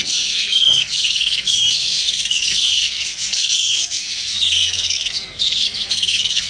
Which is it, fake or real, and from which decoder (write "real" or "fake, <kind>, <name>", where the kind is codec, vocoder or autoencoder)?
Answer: fake, codec, SNAC